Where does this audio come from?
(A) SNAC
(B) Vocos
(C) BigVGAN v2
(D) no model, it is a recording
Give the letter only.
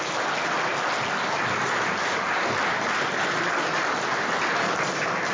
D